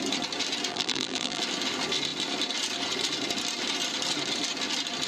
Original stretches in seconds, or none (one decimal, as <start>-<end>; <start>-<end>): 0.0-0.7; 1.4-5.1